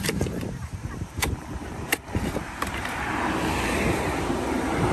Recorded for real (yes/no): no